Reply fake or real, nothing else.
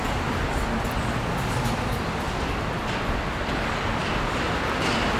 real